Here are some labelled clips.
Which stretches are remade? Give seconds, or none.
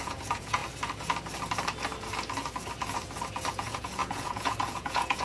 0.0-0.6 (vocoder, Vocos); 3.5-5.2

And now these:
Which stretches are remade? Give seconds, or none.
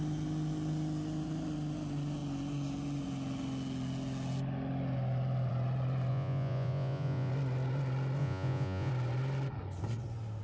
6.1-7.3 (vocoder, Vocos); 8.2-8.9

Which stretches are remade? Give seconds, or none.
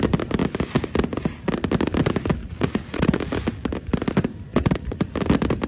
2.4-3.2 (vocoder, Vocos); 4.5-5.1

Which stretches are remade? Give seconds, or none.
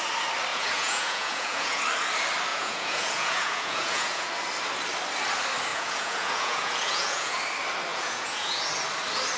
0.5-1.8 (vocoder, Vocos); 2.5-4.3; 5.7-7.4; 7.9-8.6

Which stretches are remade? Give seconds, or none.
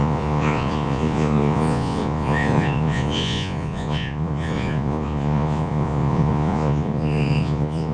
0.0-7.9 (vocoder, Vocos)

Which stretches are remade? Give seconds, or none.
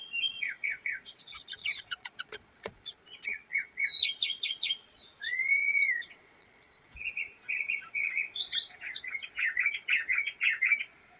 0.0-11.2 (vocoder, Vocos)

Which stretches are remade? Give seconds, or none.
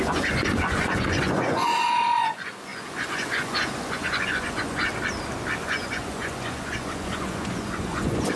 0.0-4.9 (vocoder, Vocos); 5.6-8.4